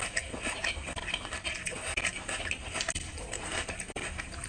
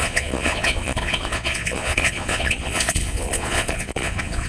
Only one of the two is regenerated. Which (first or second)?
second